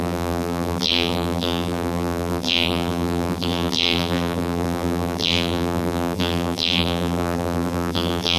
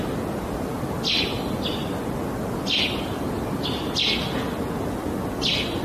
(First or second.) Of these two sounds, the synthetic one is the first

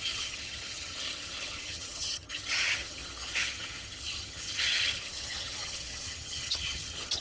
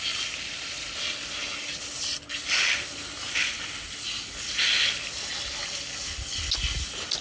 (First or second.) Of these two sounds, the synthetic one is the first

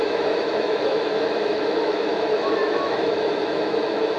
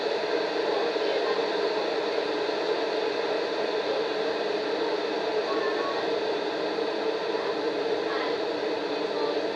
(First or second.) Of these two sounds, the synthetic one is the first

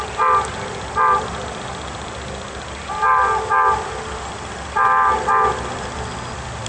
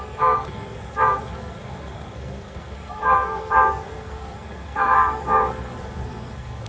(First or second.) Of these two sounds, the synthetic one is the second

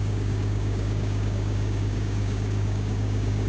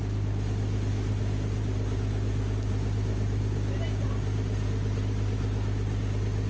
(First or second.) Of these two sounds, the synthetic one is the first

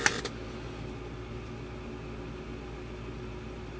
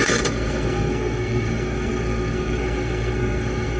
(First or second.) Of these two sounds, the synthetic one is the second